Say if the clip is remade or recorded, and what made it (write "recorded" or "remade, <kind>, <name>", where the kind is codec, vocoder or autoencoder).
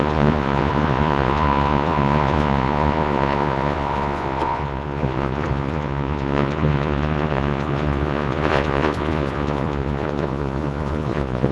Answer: remade, vocoder, Vocos